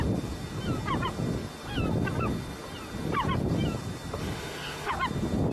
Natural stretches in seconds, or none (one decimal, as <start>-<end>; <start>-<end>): 0.0-4.2; 4.9-5.5

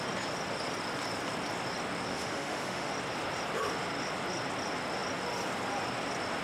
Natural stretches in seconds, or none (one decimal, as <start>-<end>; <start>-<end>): 0.0-2.1; 2.9-6.4